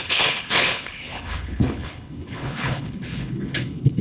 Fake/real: fake